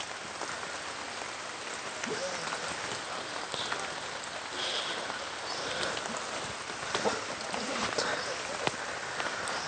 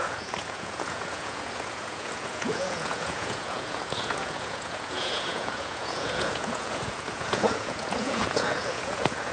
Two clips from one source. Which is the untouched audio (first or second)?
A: first